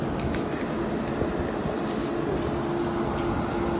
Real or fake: real